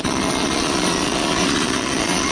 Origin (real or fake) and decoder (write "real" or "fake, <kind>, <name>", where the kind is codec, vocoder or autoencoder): fake, vocoder, Vocos